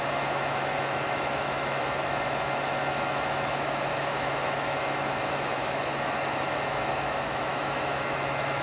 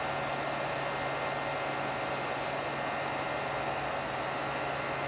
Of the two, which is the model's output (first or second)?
first